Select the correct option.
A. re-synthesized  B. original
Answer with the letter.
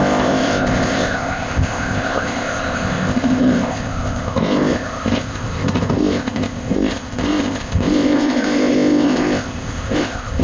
A